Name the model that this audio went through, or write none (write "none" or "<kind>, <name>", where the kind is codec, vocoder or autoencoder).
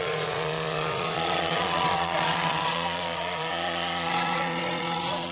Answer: vocoder, Vocos